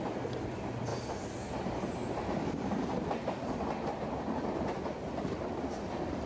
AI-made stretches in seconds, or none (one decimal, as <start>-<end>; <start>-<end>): none